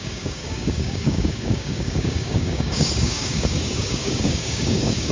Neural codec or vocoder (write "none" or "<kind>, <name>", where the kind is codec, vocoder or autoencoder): codec, DAC